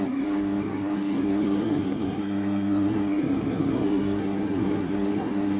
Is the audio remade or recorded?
remade